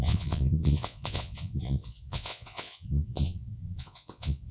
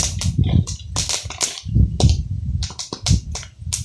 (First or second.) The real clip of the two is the second